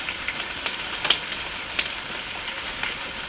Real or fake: real